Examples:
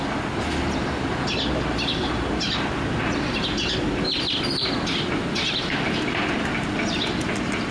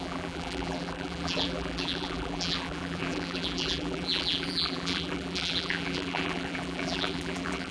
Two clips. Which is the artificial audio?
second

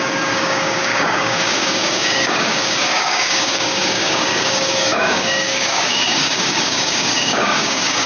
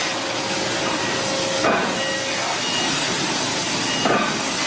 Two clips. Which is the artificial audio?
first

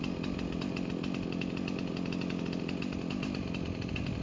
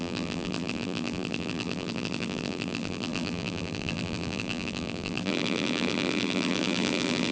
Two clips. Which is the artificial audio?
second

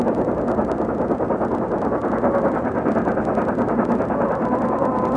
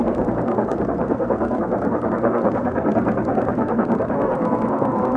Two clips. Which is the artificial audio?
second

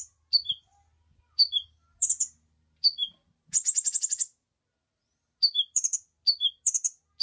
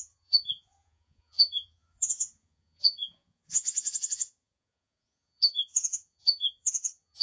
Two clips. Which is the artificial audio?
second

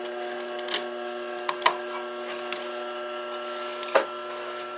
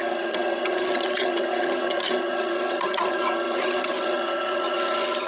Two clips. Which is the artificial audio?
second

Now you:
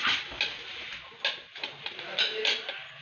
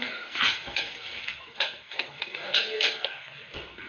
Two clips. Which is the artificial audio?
second